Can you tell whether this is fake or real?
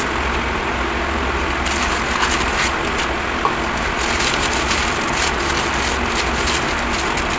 real